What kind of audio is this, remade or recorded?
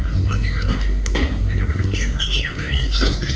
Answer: remade